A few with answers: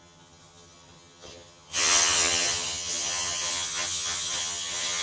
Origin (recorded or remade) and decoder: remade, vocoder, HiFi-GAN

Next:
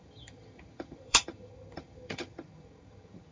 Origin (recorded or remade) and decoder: remade, vocoder, HiFi-GAN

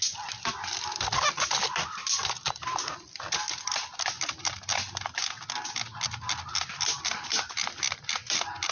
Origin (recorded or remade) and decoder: recorded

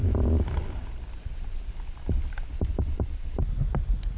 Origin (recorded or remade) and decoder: recorded